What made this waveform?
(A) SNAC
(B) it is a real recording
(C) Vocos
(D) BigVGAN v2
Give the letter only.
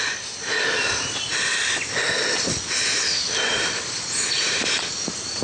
B